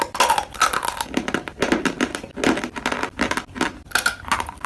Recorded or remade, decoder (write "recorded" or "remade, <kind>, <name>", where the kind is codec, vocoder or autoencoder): recorded